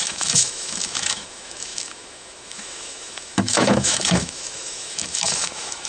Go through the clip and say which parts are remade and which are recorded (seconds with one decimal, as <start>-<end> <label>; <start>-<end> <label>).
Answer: 0.0-5.9 remade